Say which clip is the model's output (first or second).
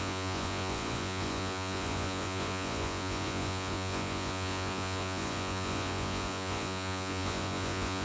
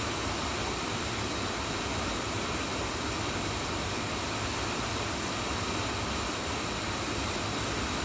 first